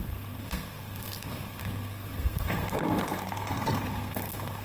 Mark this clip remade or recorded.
remade